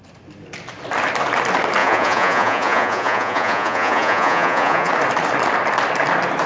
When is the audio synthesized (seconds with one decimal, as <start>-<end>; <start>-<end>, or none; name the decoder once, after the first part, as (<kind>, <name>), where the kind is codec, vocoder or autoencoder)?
1.8-4.9 (vocoder, Vocos)